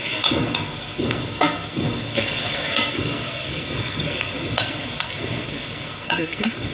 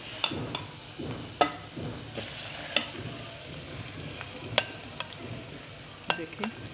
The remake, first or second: first